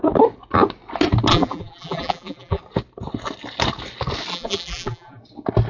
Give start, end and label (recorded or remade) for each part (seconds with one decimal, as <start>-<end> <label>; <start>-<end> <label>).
0.0-1.3 recorded; 1.3-2.6 remade; 2.6-4.3 recorded; 4.3-5.2 remade; 5.2-5.7 recorded